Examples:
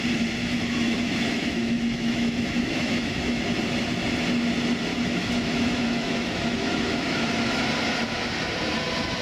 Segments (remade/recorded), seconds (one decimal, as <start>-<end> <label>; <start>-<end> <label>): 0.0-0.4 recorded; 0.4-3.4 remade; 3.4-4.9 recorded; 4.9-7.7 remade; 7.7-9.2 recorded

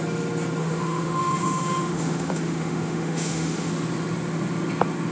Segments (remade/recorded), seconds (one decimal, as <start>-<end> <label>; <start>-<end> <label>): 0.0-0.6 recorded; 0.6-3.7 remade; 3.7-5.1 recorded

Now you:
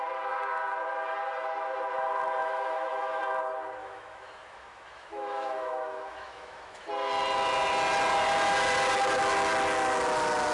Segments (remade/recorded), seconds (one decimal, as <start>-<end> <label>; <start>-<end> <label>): 0.0-2.4 recorded; 2.4-3.2 remade; 3.2-3.8 recorded; 3.8-6.9 remade; 6.9-10.5 recorded